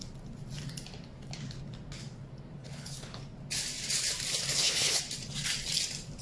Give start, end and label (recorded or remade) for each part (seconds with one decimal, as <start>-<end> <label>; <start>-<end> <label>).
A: 0.0-2.6 recorded; 2.6-3.2 remade; 3.2-4.5 recorded; 4.5-5.0 remade; 5.0-6.2 recorded